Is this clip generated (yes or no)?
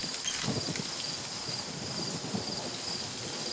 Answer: no